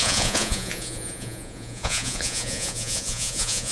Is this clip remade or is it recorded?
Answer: remade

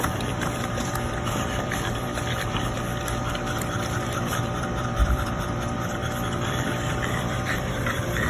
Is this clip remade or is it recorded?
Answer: remade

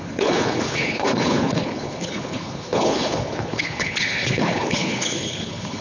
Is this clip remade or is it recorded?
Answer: remade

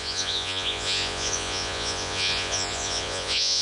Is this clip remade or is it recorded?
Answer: remade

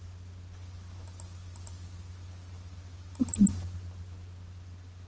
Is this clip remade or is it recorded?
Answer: recorded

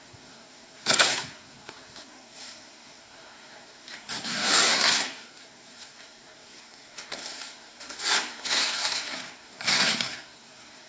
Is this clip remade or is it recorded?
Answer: remade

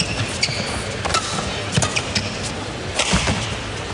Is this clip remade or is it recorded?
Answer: recorded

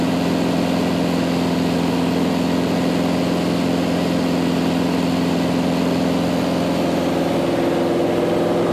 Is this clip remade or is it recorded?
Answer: recorded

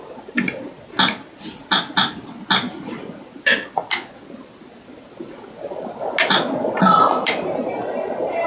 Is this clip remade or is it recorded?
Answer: recorded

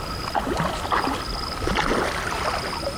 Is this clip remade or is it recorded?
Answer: recorded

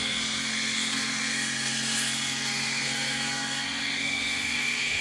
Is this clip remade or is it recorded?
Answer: remade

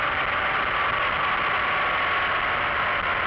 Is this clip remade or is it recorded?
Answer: recorded